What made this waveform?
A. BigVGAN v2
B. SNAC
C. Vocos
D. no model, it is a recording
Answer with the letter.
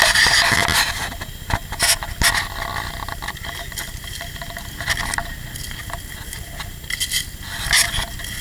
D